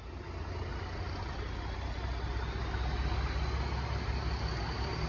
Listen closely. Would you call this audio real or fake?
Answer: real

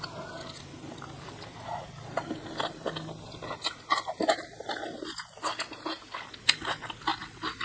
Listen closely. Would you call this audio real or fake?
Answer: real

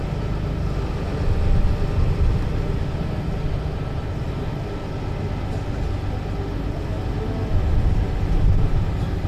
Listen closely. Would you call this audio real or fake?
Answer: real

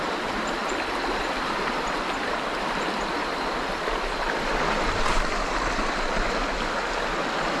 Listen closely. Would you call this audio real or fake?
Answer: real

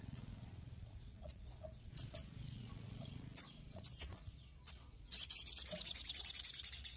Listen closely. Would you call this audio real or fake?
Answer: fake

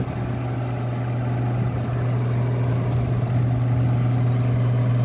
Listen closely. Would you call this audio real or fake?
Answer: real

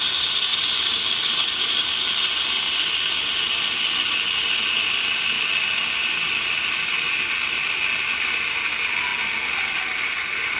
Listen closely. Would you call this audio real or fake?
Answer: real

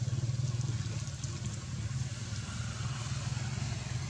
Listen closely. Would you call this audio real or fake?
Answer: real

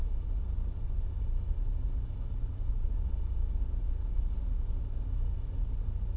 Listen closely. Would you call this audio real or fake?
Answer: fake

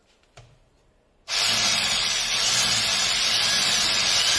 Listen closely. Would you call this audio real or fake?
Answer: real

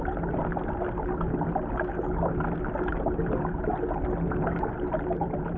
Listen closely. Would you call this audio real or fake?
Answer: real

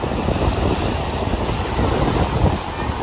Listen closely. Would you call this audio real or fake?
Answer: real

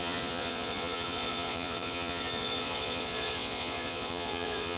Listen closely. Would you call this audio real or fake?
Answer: fake